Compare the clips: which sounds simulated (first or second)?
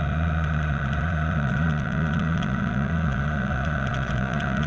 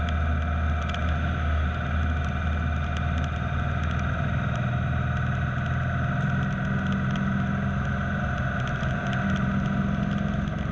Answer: first